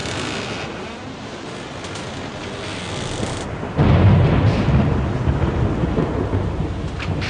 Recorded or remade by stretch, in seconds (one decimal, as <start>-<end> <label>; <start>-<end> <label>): 0.0-7.3 recorded